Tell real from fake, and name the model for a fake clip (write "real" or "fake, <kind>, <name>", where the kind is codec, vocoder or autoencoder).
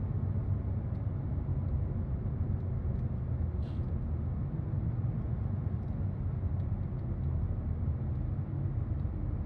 real